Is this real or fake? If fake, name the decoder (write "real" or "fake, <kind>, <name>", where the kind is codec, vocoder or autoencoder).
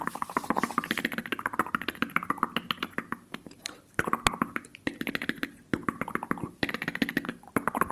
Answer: real